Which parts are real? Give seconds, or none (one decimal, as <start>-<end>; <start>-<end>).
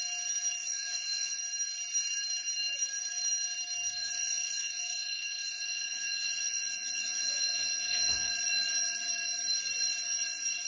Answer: 0.0-0.6; 1.4-4.0; 8.3-10.7